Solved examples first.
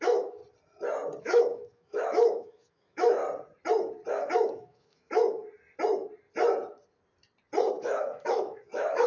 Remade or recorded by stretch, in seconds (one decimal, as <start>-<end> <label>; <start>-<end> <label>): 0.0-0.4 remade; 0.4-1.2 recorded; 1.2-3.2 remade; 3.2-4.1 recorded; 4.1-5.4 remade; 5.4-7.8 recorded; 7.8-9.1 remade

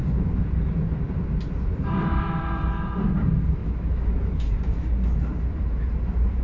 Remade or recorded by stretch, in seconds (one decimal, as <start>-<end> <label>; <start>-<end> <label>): 0.0-3.6 recorded; 3.6-4.5 remade; 4.5-6.4 recorded

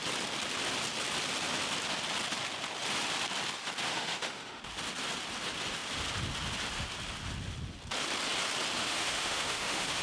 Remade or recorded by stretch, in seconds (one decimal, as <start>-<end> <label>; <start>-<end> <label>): 0.0-3.9 recorded; 3.9-4.6 remade; 4.6-8.8 recorded; 8.8-10.0 remade

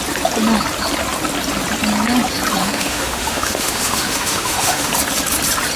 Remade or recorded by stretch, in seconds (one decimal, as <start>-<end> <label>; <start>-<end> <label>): 0.0-2.6 recorded; 2.6-4.9 remade; 4.9-5.8 recorded

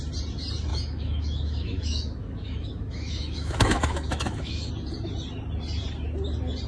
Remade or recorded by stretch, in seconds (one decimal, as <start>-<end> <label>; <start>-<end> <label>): 0.0-0.7 recorded; 0.7-4.7 remade; 4.7-6.7 recorded

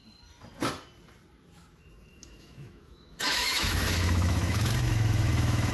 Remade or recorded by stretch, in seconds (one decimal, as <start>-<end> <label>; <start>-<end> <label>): 0.0-2.1 recorded; 2.1-5.7 remade